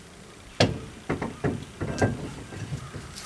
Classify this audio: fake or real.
real